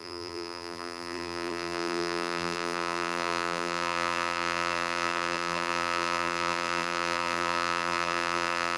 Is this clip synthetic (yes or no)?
yes